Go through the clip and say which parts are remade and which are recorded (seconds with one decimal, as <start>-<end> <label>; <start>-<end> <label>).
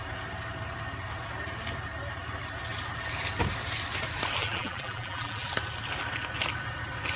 0.0-4.4 recorded; 4.4-5.5 remade; 5.5-7.2 recorded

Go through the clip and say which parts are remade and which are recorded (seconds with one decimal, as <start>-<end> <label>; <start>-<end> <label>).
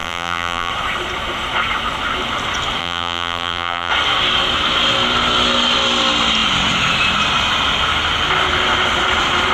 0.0-0.7 remade; 0.7-2.8 recorded; 2.8-3.9 remade; 3.9-9.5 recorded